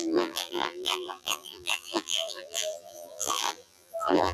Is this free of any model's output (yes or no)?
no